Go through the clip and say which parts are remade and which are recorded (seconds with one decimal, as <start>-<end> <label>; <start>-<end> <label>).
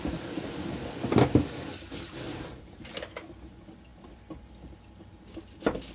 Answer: 0.0-2.3 recorded; 2.3-2.8 remade; 2.8-5.9 recorded